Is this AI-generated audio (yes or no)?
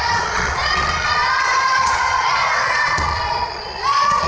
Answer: yes